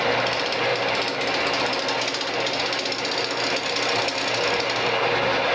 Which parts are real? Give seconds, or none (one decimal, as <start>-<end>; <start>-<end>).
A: 0.0-5.5